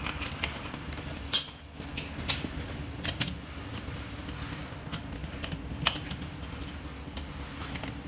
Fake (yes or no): no